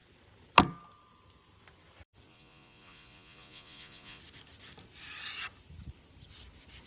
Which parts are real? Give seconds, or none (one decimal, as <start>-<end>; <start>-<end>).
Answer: 0.0-2.3; 4.2-6.9

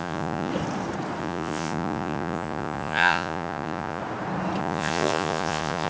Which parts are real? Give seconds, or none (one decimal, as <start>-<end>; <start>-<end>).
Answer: 0.5-1.2; 4.0-4.6

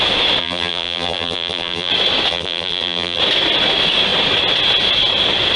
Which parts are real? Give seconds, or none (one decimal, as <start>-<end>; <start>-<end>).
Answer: 0.0-0.4; 1.9-2.3; 3.2-5.6